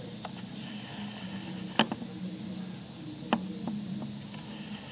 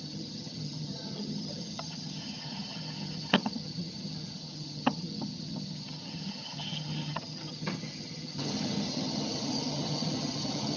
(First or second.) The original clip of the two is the first